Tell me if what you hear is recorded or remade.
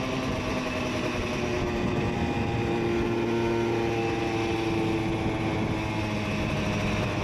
recorded